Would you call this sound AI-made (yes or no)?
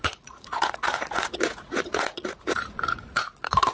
yes